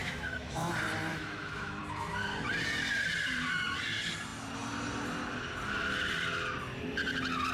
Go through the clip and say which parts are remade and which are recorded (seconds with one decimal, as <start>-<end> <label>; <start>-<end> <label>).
0.0-0.7 remade; 0.7-1.1 recorded; 1.1-1.8 remade; 1.8-7.5 recorded